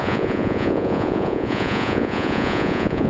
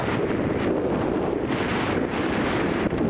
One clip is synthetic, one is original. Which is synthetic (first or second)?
first